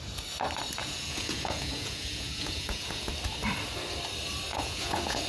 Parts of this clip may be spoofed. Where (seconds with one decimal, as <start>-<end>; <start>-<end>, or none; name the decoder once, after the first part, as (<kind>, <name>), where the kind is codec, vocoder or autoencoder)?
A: 0.8-3.1 (vocoder, Vocos); 4.5-5.3